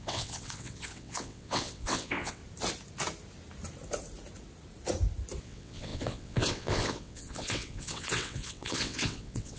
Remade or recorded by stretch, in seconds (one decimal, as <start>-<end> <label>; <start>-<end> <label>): 0.0-2.4 remade; 2.4-5.4 recorded; 5.4-9.6 remade